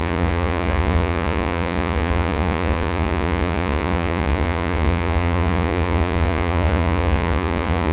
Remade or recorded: remade